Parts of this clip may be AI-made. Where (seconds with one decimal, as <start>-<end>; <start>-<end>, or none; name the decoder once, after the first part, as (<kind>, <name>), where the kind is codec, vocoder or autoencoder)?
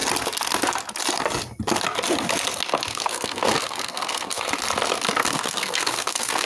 2.9-4.5 (codec, SNAC); 5.2-6.5